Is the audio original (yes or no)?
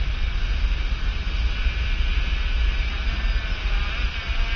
yes